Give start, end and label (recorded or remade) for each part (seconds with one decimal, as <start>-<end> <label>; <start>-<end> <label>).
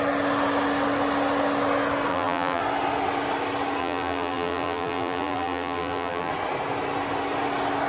0.0-2.1 recorded; 2.1-2.6 remade; 2.6-3.8 recorded; 3.8-6.3 remade; 6.3-7.9 recorded